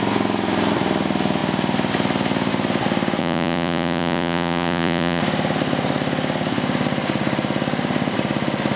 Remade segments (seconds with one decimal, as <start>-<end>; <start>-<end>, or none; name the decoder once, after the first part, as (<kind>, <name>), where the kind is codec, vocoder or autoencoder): 3.2-5.2 (vocoder, Vocos)